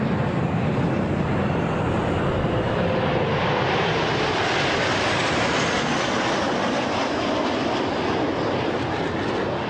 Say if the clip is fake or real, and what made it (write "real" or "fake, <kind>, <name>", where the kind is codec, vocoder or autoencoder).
real